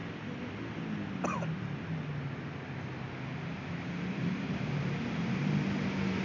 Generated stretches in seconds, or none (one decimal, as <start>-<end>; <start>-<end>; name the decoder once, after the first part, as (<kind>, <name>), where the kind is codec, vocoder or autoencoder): none